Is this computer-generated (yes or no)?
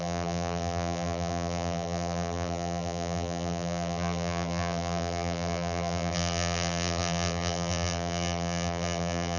yes